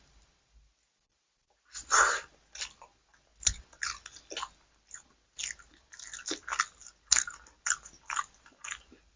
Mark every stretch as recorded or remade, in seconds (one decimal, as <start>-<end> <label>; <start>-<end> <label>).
0.0-9.2 recorded